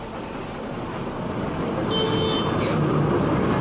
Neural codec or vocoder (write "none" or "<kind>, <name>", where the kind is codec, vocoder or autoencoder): none